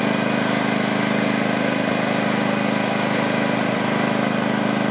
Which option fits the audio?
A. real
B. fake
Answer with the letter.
A